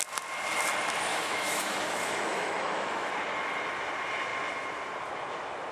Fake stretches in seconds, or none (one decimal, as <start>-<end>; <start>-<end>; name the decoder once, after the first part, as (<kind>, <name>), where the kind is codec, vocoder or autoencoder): 1.1-3.1 (autoencoder, DAC-VAE)